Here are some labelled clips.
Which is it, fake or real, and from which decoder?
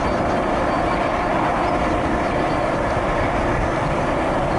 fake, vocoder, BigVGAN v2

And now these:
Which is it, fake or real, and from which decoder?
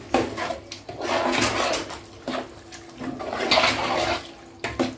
real